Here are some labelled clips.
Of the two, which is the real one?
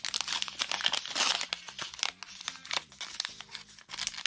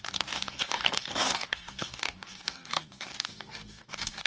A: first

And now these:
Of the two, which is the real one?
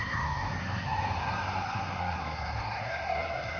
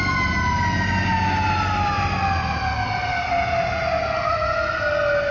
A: second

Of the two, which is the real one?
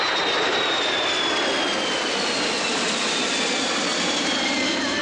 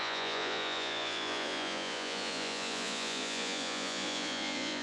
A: first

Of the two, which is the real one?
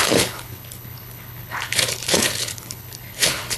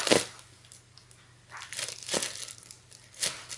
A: second